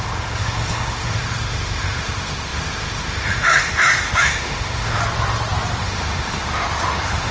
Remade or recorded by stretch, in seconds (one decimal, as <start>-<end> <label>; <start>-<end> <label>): 0.0-5.0 remade; 5.0-5.8 recorded; 5.8-7.3 remade